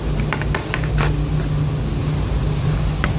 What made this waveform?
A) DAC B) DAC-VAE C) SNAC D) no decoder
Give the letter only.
D